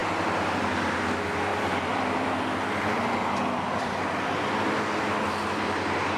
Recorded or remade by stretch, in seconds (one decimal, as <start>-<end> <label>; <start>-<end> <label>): 0.0-1.5 recorded; 1.5-4.0 remade; 4.0-6.2 recorded